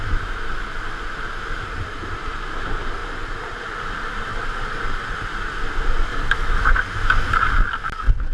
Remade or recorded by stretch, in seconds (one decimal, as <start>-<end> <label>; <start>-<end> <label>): 0.0-6.1 recorded; 6.1-6.8 remade; 6.8-8.3 recorded